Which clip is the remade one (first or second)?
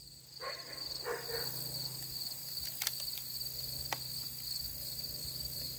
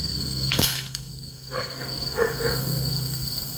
second